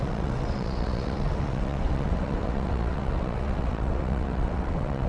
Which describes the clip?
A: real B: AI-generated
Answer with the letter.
B